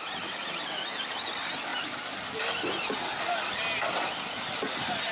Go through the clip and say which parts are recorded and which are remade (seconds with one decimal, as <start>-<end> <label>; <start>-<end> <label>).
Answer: 0.0-5.1 recorded